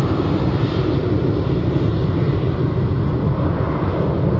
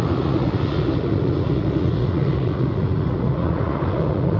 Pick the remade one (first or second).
second